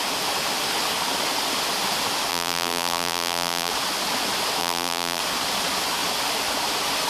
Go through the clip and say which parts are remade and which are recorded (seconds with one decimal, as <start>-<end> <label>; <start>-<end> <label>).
0.0-2.3 recorded; 2.3-3.7 remade; 3.7-4.6 recorded; 4.6-5.2 remade; 5.2-7.1 recorded